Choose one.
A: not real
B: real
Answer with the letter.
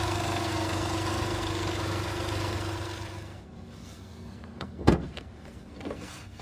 A